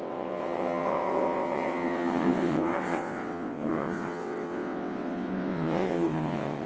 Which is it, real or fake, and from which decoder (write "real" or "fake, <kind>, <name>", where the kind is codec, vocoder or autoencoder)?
fake, vocoder, WaveNeXt